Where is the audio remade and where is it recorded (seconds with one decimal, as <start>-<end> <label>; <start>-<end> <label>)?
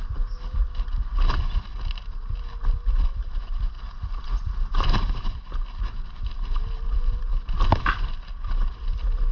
0.0-9.3 recorded